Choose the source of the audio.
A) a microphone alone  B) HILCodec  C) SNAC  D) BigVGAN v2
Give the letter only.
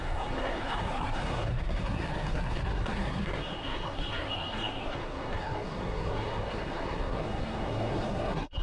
C